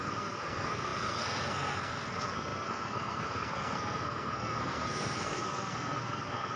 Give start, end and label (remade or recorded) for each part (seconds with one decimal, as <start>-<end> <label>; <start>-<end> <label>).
0.0-6.6 remade